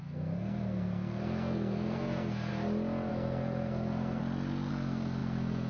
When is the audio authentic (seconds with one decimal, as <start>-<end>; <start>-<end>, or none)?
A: 2.5-3.1; 4.2-4.7

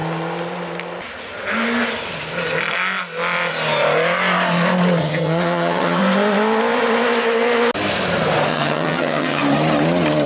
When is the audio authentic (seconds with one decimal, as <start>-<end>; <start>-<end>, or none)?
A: 0.0-5.0; 6.0-8.5; 9.4-10.3